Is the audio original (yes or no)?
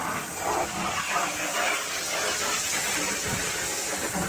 yes